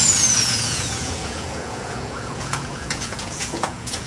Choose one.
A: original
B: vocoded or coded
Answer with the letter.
B